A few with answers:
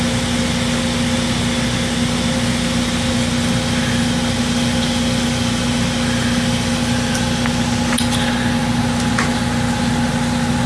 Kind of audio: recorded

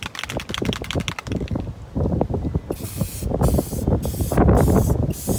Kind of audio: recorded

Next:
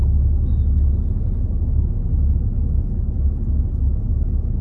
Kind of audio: recorded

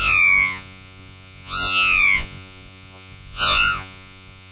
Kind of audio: remade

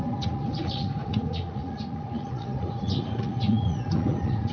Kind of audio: remade